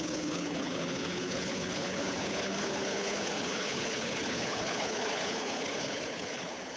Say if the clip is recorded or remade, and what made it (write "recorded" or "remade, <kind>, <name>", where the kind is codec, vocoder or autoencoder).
remade, codec, HILCodec